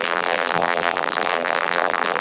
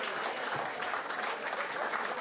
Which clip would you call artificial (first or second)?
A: first